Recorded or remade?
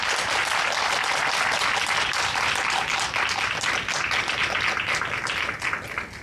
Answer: recorded